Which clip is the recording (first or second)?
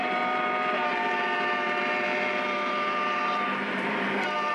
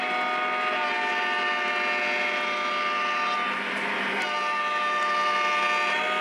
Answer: second